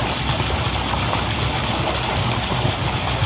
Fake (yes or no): no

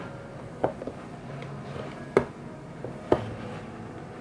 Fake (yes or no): no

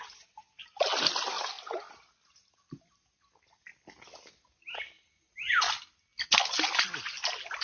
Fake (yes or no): no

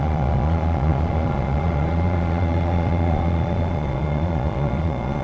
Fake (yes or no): yes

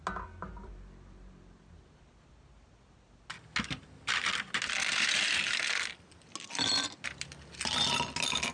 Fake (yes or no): no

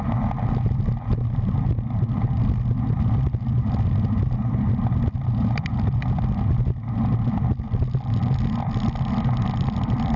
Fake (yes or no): no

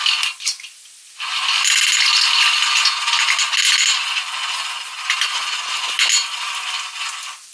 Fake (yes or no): no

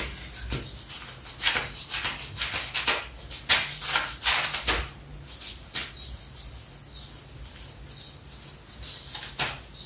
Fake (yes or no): no